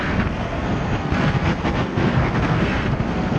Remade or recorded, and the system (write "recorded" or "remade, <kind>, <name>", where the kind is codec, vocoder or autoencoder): remade, codec, SNAC